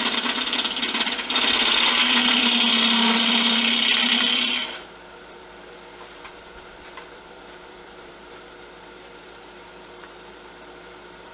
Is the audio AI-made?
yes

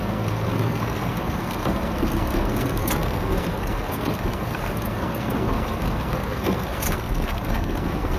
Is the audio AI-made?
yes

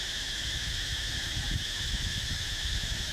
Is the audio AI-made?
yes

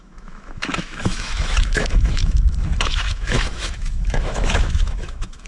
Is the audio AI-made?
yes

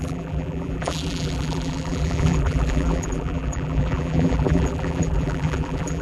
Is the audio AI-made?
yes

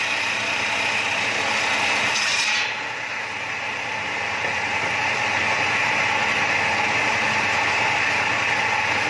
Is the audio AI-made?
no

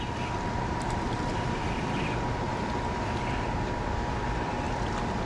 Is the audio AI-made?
yes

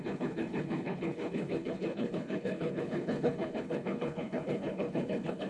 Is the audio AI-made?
yes